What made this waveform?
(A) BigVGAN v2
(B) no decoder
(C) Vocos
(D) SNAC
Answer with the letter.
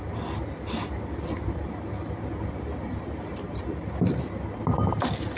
B